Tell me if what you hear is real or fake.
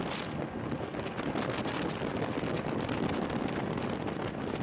real